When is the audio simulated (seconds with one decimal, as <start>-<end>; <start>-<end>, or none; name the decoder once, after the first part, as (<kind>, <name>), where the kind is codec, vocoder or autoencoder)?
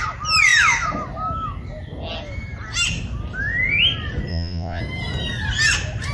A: 4.3-4.8 (vocoder, Vocos)